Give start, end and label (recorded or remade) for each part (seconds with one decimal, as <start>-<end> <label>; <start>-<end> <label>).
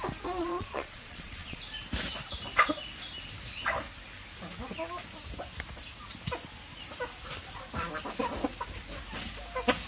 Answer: 0.0-0.4 recorded; 0.4-1.6 remade; 1.6-9.9 recorded